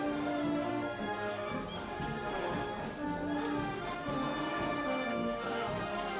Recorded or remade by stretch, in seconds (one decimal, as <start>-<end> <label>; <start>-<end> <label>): 0.0-0.7 recorded; 0.7-1.5 remade; 1.5-5.1 recorded; 5.1-6.2 remade